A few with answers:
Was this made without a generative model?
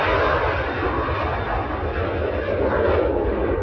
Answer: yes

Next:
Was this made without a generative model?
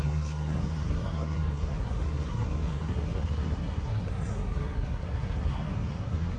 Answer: no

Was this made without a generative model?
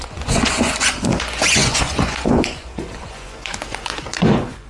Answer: no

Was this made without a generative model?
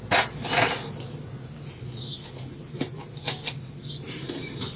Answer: yes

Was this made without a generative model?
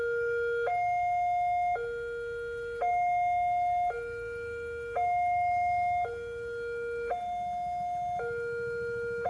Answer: yes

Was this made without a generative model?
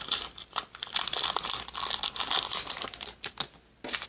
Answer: yes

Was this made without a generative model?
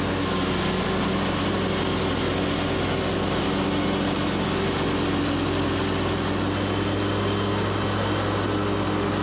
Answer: yes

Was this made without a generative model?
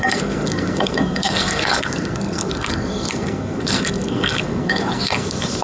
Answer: no